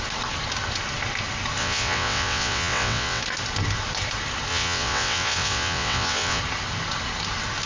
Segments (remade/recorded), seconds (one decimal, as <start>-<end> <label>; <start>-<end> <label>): 0.0-1.6 recorded; 1.6-3.2 remade; 3.2-4.5 recorded; 4.5-6.4 remade; 6.4-7.7 recorded